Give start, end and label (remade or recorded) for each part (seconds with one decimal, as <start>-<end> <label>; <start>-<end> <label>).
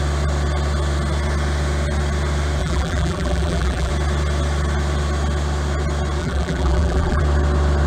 0.0-2.6 recorded; 2.6-3.9 remade; 3.9-6.2 recorded; 6.2-7.2 remade; 7.2-7.9 recorded